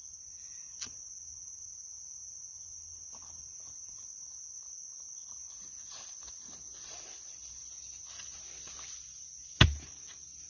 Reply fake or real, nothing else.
real